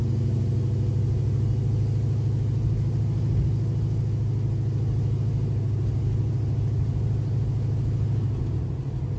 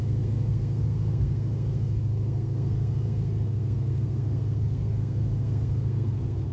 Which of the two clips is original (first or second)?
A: first